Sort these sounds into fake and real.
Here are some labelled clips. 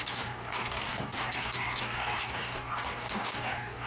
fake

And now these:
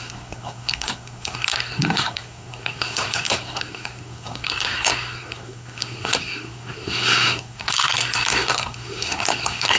fake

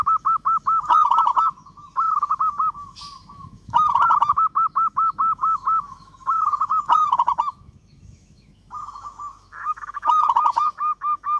fake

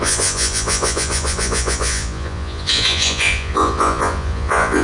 fake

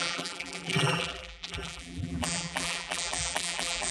fake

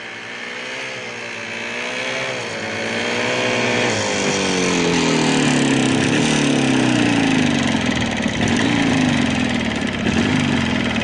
real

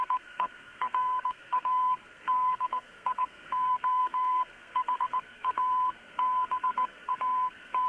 fake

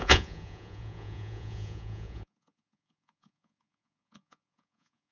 fake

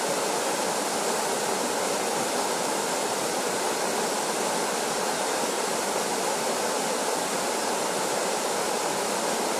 real